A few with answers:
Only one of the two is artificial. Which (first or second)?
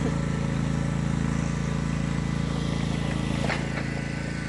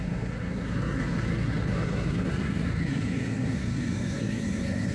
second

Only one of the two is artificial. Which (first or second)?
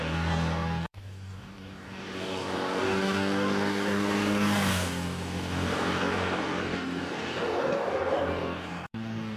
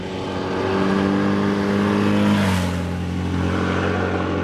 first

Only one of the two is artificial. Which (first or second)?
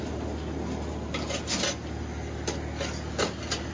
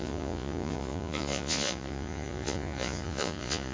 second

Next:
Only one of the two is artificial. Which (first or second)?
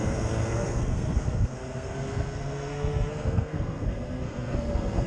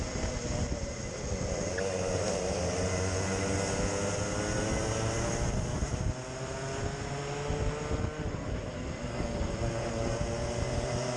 first